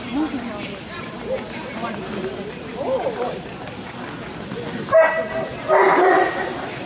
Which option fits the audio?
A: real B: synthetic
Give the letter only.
A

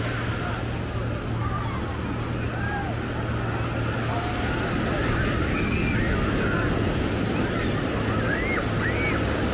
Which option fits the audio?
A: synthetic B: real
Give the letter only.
B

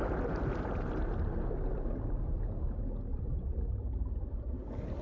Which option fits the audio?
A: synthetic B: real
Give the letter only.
B